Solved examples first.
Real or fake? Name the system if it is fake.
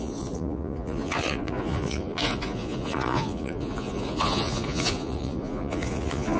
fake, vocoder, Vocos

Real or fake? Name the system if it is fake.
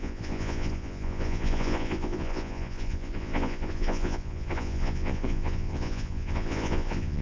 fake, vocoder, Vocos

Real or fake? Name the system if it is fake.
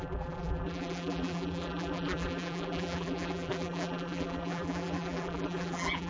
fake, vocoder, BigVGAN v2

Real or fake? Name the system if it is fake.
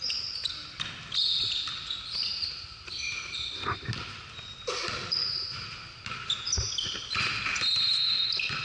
real